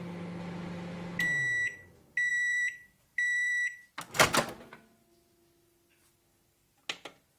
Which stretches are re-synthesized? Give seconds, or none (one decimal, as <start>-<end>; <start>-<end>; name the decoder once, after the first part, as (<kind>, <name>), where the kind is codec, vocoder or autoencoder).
2.3-3.5 (vocoder, BigVGAN v2)